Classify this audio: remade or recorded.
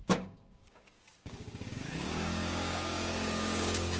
remade